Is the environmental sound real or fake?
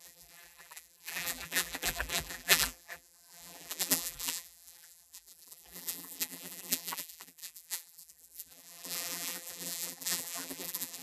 fake